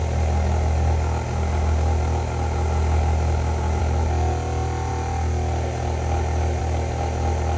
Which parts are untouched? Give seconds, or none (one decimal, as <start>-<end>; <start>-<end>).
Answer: 0.0-7.6